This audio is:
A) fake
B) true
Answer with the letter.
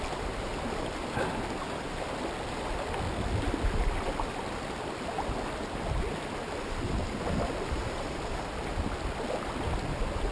B